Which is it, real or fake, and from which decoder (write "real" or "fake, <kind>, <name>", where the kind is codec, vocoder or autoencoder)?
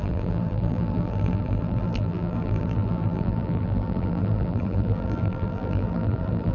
fake, vocoder, BigVGAN v2